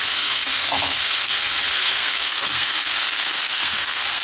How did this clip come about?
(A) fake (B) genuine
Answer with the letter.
A